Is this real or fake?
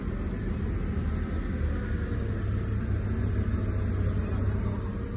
real